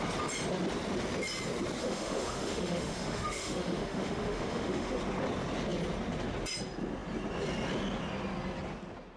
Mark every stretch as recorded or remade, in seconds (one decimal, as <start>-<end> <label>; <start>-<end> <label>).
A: 0.0-1.8 recorded; 1.8-5.0 remade; 5.0-9.2 recorded